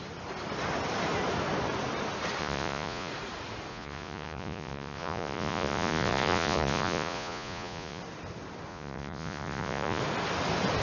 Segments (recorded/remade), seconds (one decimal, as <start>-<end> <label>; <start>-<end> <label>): 0.0-2.4 recorded; 2.4-3.1 remade; 3.1-3.7 recorded; 3.7-8.0 remade; 8.0-8.7 recorded; 8.7-10.0 remade; 10.0-10.8 recorded